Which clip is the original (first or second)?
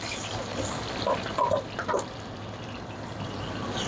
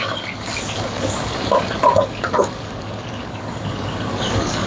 first